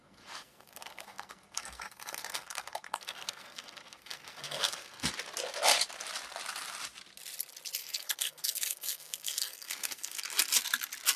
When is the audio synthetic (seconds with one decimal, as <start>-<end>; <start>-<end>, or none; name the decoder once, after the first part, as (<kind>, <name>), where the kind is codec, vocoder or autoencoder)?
0.0-5.1 (codec, SNAC); 7.8-10.2